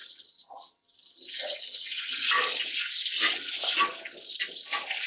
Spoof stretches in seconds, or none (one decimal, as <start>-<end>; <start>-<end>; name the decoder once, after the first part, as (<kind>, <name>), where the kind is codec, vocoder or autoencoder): 0.0-2.3 (vocoder, HiFi-GAN)